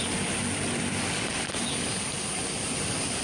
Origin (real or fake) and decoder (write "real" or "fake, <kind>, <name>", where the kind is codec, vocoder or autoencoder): fake, vocoder, BigVGAN v2